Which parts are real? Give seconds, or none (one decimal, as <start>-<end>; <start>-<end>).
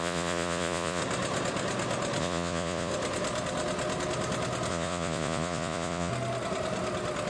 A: 1.0-2.2; 2.9-4.7; 6.1-7.3